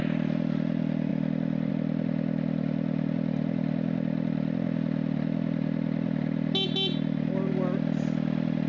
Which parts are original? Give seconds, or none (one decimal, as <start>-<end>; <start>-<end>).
0.0-8.7